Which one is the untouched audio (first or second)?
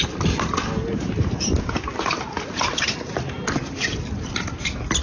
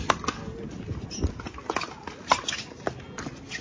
second